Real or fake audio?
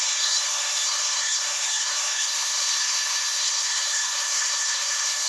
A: fake